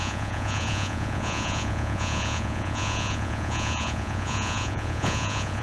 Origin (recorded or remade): remade